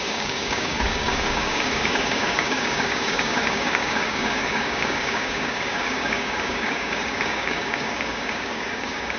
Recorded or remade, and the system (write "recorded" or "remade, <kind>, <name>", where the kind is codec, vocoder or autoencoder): remade, codec, DAC